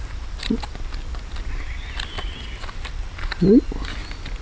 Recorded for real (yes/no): yes